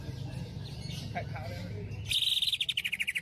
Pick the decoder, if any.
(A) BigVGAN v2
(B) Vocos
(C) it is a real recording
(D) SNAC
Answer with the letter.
C